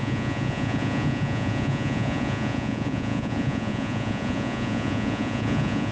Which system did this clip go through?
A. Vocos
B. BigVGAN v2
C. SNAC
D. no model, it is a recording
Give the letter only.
A